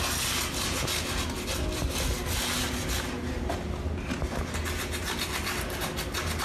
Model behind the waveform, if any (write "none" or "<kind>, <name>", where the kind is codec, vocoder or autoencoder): none